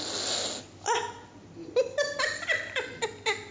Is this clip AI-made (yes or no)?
no